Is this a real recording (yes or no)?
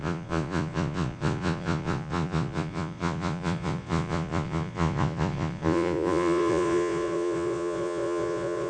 no